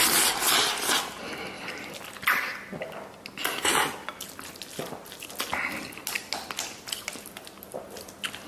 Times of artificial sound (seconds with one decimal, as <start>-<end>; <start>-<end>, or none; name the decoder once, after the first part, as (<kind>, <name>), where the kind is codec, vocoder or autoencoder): none